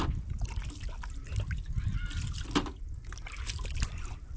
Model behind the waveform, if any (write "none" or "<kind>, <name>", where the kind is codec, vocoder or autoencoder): none